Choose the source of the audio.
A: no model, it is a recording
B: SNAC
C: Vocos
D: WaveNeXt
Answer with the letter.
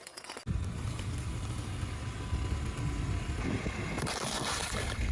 A